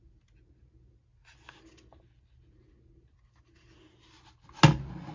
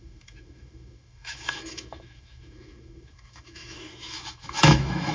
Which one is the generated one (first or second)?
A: second